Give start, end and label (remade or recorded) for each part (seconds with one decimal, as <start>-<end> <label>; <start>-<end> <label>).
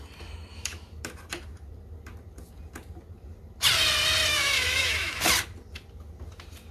0.0-0.5 recorded; 0.5-1.0 remade; 1.0-4.3 recorded; 4.3-5.2 remade; 5.2-6.7 recorded